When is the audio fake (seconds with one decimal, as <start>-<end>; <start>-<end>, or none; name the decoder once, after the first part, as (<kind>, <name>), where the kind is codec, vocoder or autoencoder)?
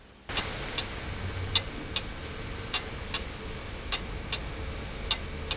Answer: none